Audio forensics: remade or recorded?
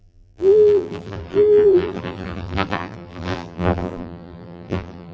remade